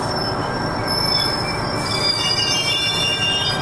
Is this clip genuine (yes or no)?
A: yes